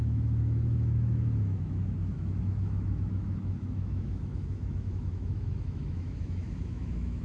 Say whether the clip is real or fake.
fake